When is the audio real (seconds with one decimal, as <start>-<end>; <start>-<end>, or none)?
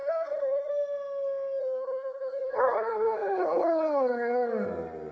0.7-1.6; 4.5-5.1